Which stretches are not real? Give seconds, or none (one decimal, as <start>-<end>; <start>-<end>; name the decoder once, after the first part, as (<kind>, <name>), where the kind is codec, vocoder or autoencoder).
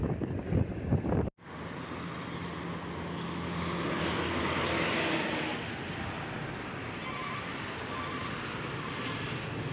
none